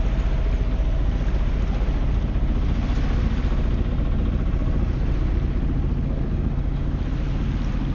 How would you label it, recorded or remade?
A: recorded